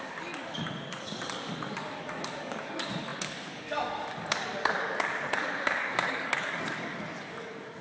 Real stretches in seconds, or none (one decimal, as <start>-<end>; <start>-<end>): none

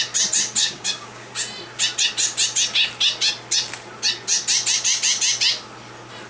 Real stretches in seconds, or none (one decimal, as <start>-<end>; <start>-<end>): 0.0-0.6; 1.3-6.3